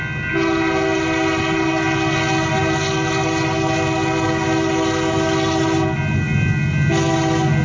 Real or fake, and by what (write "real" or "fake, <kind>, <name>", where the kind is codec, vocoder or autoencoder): real